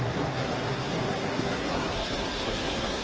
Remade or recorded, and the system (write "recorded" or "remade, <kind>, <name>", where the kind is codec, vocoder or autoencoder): remade, codec, SNAC